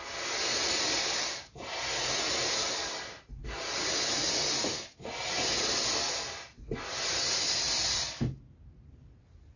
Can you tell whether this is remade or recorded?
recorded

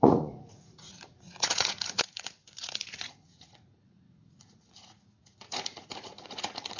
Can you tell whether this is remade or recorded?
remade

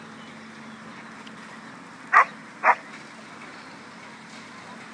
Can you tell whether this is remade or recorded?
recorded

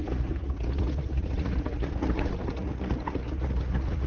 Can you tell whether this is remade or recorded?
remade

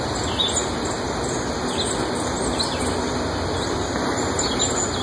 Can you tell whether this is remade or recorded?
recorded